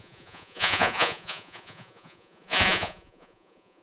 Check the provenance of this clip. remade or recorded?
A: remade